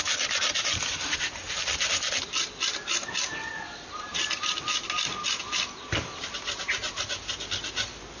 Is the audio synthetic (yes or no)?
no